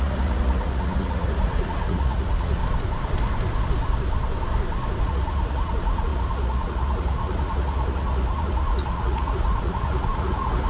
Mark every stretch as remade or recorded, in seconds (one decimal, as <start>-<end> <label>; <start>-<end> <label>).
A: 0.0-2.6 remade; 2.6-5.0 recorded; 5.0-10.7 remade